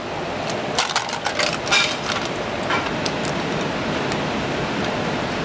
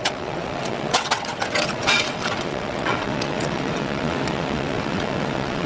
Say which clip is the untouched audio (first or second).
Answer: first